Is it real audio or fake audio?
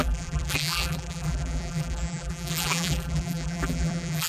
fake